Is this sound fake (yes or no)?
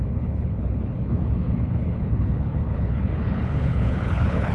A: yes